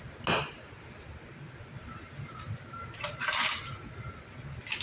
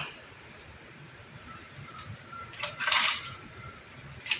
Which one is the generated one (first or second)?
second